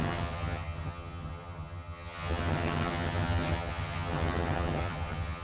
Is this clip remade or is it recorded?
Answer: remade